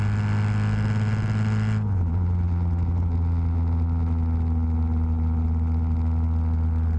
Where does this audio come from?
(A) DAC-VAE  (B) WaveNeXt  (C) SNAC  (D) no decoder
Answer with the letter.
D